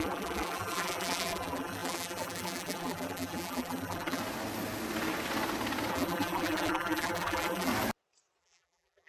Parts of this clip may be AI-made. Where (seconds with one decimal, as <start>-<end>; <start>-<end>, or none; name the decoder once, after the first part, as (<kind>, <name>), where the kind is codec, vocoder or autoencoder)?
0.0-4.2 (vocoder, BigVGAN v2); 5.9-7.7; 8.4-9.1